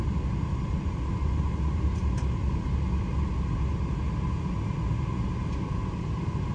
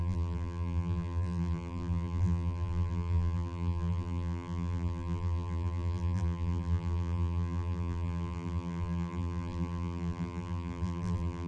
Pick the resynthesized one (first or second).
second